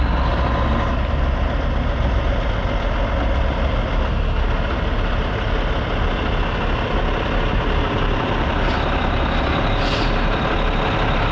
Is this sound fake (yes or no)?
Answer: no